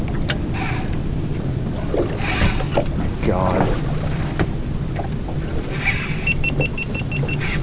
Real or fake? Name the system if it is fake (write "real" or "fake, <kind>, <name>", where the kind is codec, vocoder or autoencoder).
real